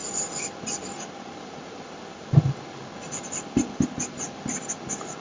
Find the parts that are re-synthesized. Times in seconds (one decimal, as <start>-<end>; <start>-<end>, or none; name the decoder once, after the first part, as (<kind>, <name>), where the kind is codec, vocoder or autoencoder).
none